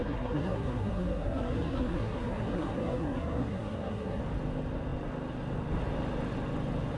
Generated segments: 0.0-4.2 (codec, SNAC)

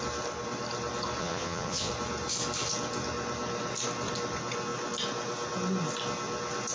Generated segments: 1.2-1.9 (vocoder, Vocos)

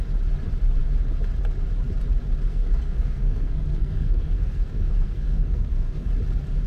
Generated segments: 2.5-6.1 (codec, SNAC)

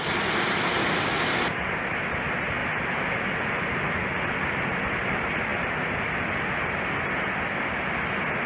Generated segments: none

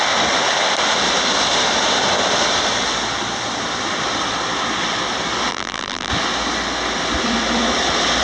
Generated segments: 5.5-6.1 (vocoder, BigVGAN v2)

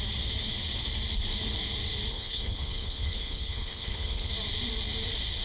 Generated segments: 2.1-4.3 (codec, HILCodec)

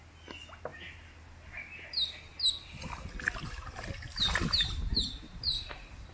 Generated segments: 5.1-6.1 (vocoder, BigVGAN v2)

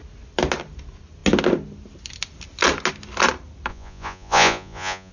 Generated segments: 3.7-5.1 (vocoder, Vocos)